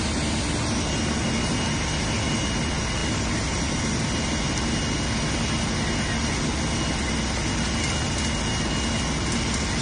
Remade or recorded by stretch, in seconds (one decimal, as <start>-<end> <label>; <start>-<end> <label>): 0.0-9.8 recorded